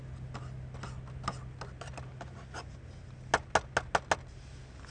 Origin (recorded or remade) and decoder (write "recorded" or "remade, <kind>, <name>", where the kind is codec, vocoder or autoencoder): recorded